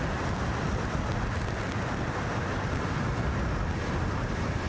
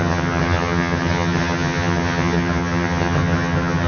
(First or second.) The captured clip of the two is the first